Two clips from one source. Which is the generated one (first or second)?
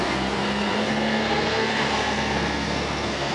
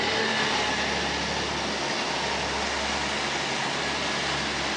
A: first